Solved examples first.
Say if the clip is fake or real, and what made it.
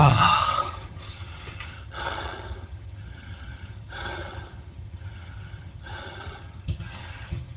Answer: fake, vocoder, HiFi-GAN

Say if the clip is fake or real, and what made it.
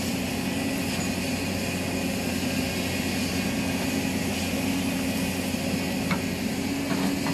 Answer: real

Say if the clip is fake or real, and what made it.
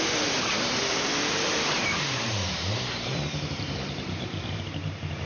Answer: fake, vocoder, BigVGAN v2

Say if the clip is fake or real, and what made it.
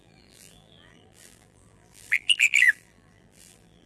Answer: fake, vocoder, BigVGAN v2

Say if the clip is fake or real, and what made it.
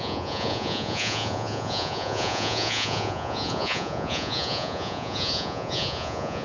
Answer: fake, vocoder, Vocos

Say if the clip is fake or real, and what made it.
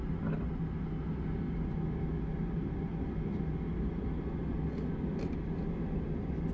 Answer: real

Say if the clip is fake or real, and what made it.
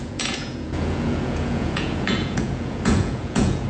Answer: fake, vocoder, Vocos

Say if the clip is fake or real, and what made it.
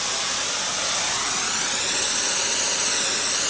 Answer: real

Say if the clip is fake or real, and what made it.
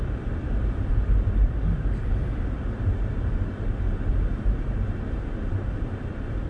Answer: fake, vocoder, BigVGAN v2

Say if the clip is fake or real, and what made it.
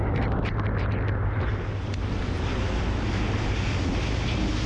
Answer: real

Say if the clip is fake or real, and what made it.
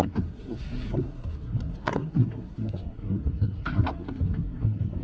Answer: fake, codec, SNAC